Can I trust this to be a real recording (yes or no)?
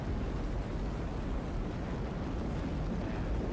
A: yes